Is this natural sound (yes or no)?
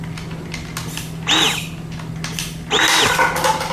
yes